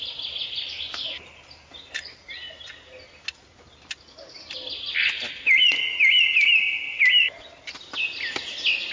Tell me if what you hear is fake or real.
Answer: real